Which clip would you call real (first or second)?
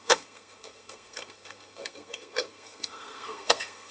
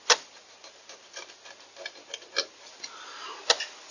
second